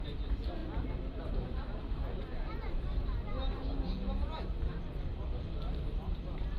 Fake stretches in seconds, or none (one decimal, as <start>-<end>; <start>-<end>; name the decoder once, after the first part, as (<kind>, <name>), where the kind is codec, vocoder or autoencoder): none